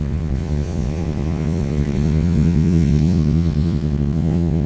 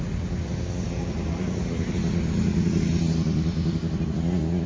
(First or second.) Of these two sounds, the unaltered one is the second